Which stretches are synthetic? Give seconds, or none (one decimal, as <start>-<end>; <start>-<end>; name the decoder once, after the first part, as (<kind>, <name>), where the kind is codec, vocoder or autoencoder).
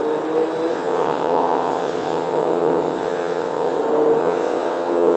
0.7-3.8 (vocoder, WaveNeXt); 4.2-5.2